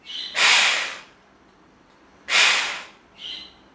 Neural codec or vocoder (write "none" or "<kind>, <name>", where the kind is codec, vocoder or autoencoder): none